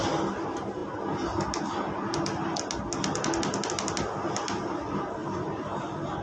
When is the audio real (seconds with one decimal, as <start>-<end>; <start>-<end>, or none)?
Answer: 0.0-5.2; 5.8-6.2